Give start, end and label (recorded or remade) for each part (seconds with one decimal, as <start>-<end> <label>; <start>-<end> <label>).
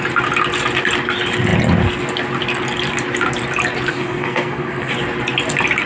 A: 0.0-3.9 recorded; 3.9-4.9 remade; 4.9-5.9 recorded